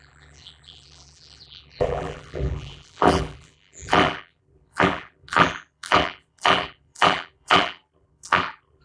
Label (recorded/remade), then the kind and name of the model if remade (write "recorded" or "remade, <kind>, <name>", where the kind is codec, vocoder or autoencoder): remade, vocoder, BigVGAN v2